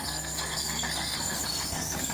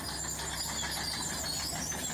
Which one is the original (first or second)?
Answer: second